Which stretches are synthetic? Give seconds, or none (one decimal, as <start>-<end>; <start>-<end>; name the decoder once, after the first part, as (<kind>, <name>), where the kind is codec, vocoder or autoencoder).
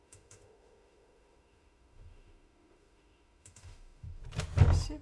0.0-4.2 (autoencoder, DAC-VAE)